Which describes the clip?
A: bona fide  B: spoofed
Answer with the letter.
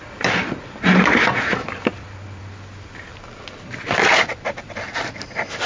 A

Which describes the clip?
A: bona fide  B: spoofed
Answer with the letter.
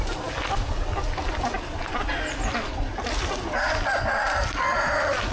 A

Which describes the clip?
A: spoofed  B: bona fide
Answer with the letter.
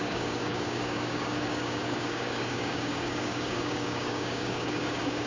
A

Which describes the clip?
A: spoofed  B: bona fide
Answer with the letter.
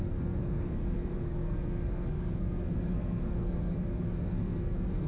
A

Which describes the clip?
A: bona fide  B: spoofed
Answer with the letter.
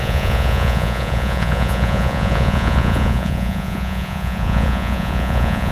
B